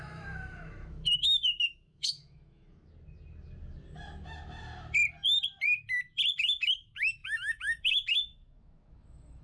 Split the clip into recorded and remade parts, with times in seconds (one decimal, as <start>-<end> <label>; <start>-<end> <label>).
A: 0.0-2.8 remade; 2.8-6.3 recorded; 6.3-9.4 remade